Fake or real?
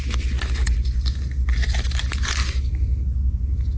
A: real